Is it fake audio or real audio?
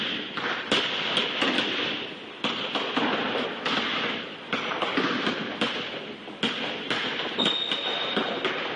real